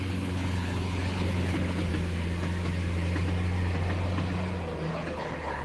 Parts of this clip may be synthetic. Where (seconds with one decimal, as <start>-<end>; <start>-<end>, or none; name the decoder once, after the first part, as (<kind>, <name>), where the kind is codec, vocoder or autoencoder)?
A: 0.0-1.9 (codec, HILCodec); 4.9-5.6